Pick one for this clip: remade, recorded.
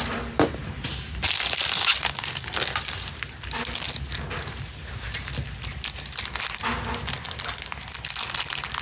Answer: recorded